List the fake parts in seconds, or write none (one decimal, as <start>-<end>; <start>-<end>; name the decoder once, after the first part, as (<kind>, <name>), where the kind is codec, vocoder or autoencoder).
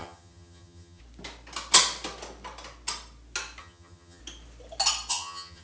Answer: 0.0-1.0 (vocoder, HiFi-GAN); 3.6-4.2; 5.1-5.6